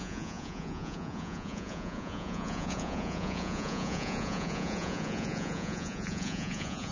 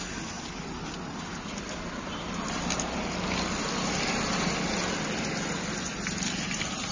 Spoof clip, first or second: first